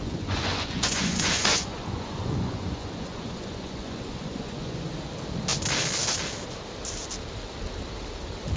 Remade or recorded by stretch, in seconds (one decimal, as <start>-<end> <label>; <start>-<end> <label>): 0.0-4.9 remade; 4.9-8.6 recorded